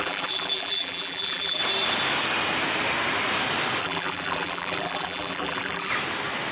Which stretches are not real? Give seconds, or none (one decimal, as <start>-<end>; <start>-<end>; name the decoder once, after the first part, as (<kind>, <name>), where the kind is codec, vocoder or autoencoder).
0.0-1.6 (vocoder, BigVGAN v2); 3.8-5.9